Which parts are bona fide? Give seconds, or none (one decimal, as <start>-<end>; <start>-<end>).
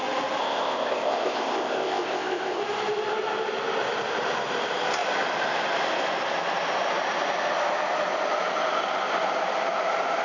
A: 0.0-0.4; 2.6-10.2